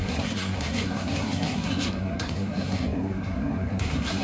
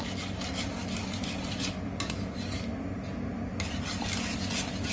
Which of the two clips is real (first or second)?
second